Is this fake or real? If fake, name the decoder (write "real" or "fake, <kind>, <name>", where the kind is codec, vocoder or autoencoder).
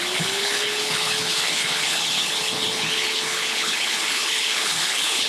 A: fake, codec, HILCodec